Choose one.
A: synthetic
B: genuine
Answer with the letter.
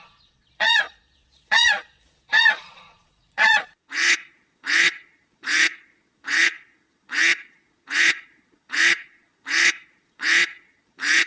A